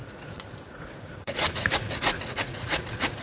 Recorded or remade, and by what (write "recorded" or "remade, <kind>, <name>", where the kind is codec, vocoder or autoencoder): remade, vocoder, Vocos